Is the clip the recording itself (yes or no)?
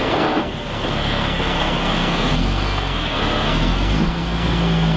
no